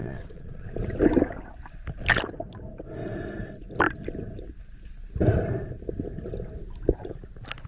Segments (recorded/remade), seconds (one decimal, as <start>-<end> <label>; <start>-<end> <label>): 0.0-0.7 remade; 0.7-7.7 recorded